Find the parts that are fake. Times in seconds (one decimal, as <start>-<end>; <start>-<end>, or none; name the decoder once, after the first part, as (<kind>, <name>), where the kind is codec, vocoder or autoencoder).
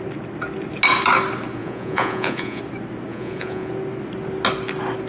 1.6-2.6 (vocoder, Vocos); 3.1-3.7